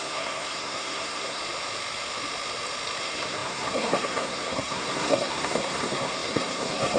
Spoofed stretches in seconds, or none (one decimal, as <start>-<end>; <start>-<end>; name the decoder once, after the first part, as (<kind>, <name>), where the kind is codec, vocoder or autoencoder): 0.0-1.4 (codec, SNAC); 3.0-7.0